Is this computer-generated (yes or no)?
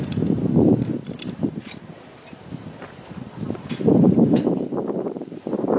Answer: yes